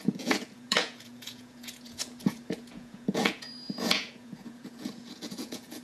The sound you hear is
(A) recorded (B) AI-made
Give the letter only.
B